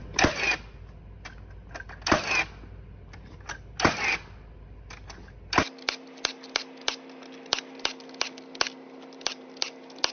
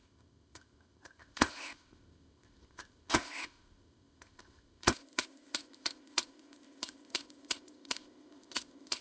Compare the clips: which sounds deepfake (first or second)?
second